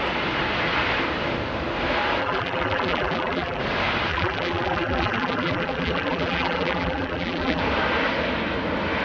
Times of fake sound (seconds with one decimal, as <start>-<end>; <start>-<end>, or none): 2.2-3.6; 4.1-7.6